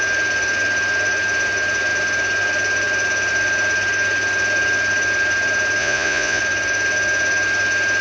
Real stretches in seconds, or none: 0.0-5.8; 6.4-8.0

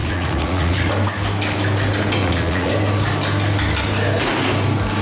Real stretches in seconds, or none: 0.9-2.2; 2.7-5.0

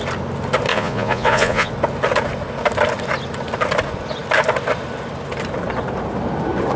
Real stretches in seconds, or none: 0.0-0.7; 1.7-6.8

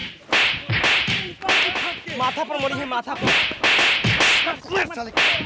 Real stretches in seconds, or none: 0.0-5.5

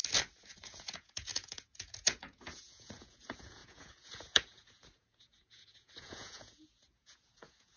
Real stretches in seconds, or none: 0.0-0.5

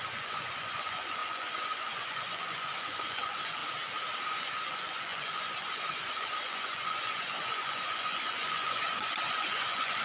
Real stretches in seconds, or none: 3.6-4.3